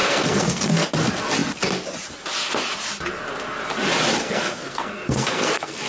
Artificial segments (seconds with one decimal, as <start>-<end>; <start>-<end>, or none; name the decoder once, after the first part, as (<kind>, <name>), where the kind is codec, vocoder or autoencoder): 0.0-0.9 (codec, SNAC); 4.2-5.9